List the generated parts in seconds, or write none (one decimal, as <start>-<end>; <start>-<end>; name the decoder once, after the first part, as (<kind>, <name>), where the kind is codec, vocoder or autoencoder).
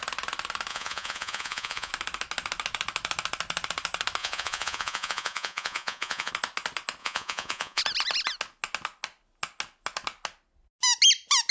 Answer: 0.7-1.9 (vocoder, Vocos); 4.2-6.3; 7.0-7.8